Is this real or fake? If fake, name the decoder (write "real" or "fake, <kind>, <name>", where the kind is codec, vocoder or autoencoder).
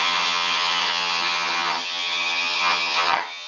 fake, vocoder, HiFi-GAN